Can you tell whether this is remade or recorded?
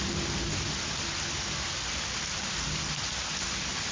recorded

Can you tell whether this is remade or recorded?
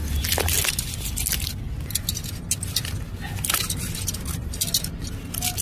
recorded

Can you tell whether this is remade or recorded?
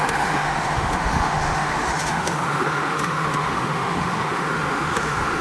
remade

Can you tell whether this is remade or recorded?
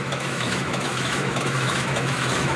remade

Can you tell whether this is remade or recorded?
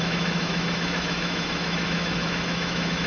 remade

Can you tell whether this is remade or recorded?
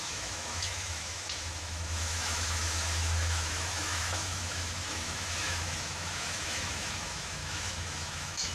remade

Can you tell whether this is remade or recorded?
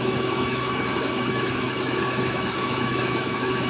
remade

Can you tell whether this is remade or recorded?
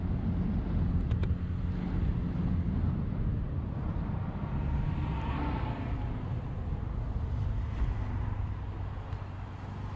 recorded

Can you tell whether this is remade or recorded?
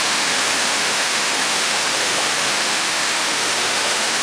remade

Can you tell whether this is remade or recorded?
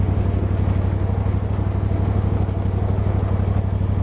recorded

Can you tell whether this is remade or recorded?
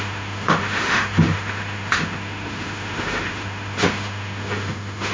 remade